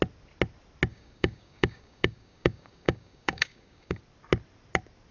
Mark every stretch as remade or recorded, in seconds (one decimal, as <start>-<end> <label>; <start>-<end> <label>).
0.0-0.9 recorded; 0.9-4.0 remade; 4.0-5.1 recorded

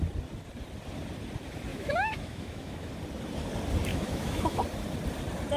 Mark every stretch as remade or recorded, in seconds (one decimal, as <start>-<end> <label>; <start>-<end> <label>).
0.0-1.7 recorded; 1.7-2.9 remade; 2.9-3.9 recorded; 3.9-4.6 remade; 4.6-5.6 recorded